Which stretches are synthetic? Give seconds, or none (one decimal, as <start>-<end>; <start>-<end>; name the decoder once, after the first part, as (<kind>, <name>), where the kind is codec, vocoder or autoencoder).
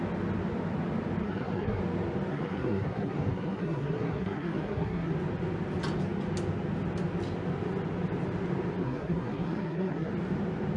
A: 1.2-1.8 (codec, SNAC); 2.3-5.1; 8.8-10.1